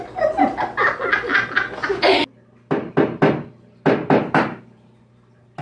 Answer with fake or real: real